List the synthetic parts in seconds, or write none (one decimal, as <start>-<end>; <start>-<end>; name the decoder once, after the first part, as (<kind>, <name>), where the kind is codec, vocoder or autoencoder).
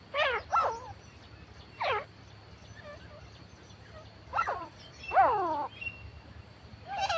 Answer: 4.3-4.9 (vocoder, Vocos)